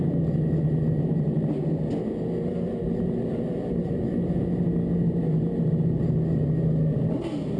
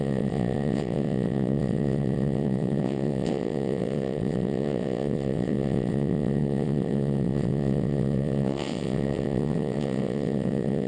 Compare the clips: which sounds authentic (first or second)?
first